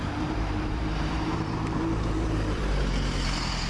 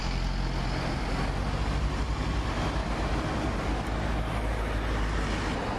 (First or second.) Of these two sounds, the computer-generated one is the first